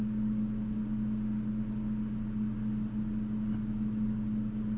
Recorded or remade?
recorded